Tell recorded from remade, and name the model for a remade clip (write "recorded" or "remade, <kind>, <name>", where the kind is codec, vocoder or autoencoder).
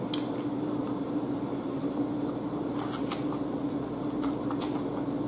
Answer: recorded